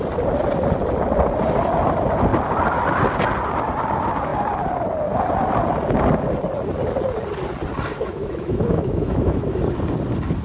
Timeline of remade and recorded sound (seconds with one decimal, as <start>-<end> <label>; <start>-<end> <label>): 0.0-7.9 recorded; 7.9-9.6 remade; 9.6-10.4 recorded